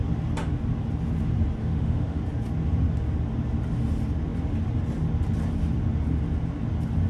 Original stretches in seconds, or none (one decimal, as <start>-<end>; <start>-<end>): 0.0-1.6; 2.2-7.1